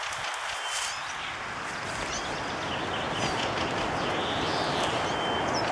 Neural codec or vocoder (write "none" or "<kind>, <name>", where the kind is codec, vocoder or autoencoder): none